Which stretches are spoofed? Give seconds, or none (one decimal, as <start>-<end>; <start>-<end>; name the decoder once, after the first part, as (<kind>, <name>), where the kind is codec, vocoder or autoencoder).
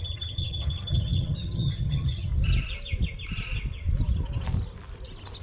0.0-2.3 (vocoder, HiFi-GAN)